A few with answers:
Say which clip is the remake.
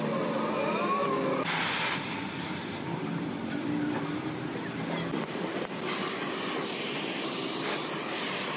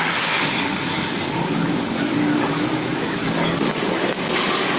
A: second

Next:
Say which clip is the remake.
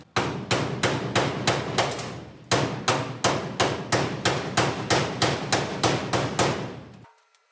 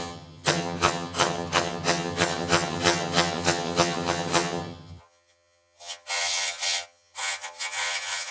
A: second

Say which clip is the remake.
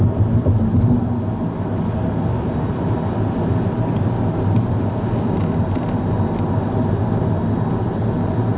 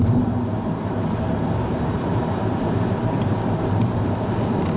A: second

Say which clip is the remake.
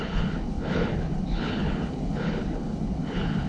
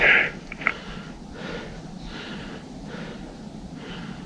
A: first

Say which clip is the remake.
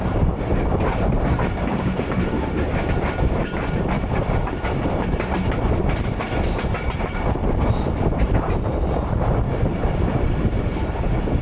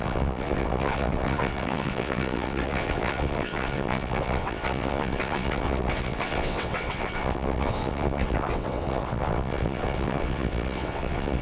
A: second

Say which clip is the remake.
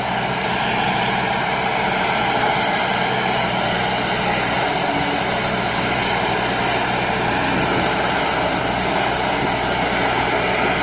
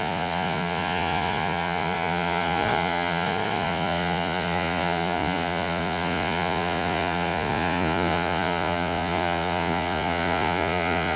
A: second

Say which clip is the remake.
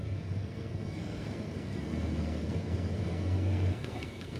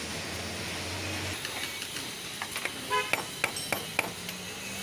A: first